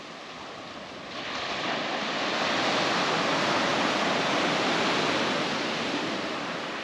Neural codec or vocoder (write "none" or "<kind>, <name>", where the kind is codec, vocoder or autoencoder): none